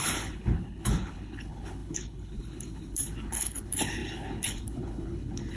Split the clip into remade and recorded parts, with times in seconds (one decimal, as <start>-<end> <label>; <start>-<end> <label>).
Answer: 0.0-5.6 remade